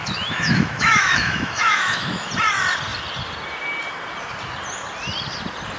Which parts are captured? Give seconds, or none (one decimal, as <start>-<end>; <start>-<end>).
2.3-5.8